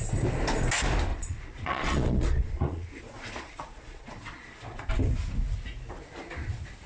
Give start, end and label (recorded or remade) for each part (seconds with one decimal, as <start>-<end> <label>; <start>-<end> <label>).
0.0-1.1 recorded; 1.1-4.9 remade; 4.9-6.9 recorded